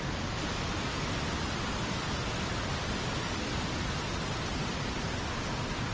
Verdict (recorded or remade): recorded